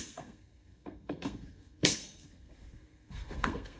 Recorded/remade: remade